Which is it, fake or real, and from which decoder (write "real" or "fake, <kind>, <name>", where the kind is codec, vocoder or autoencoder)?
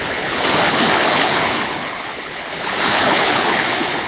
fake, codec, HILCodec